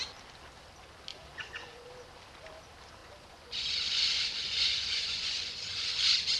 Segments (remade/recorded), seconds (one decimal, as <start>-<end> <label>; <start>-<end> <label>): 0.0-1.1 recorded; 1.1-1.9 remade; 1.9-3.0 recorded; 3.0-6.4 remade